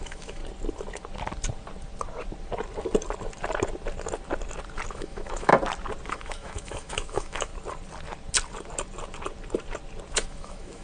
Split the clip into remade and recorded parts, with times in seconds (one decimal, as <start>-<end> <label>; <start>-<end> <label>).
0.0-0.4 remade; 0.4-4.9 recorded; 4.9-5.5 remade; 5.5-6.1 recorded; 6.1-7.5 remade; 7.5-10.1 recorded; 10.1-10.8 remade